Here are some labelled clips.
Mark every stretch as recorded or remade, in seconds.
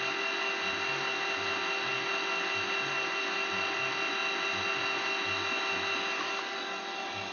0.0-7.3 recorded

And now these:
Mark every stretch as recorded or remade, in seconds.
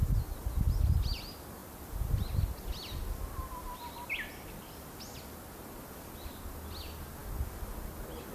0.0-8.3 recorded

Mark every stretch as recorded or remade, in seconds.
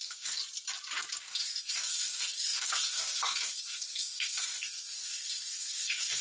0.0-0.4 remade; 0.4-1.2 recorded; 1.2-6.2 remade